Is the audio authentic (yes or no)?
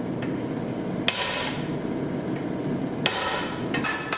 yes